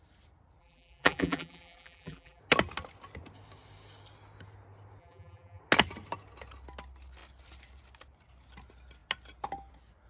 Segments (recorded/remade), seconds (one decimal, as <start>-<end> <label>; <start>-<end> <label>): 0.0-0.6 recorded; 0.6-2.4 remade; 2.4-5.0 recorded; 5.0-5.6 remade; 5.6-10.1 recorded